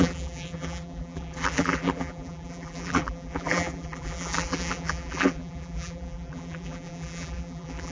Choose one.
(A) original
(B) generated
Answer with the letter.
B